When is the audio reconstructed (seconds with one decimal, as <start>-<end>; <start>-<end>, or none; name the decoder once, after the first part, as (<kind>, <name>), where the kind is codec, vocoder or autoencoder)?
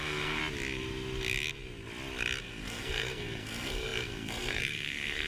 0.0-0.4 (codec, SNAC); 2.4-5.3